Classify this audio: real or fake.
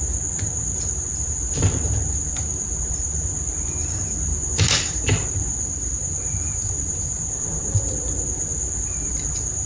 fake